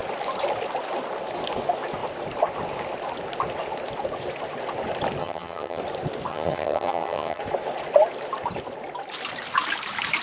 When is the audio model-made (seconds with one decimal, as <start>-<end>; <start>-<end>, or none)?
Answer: 5.2-5.8; 6.3-7.4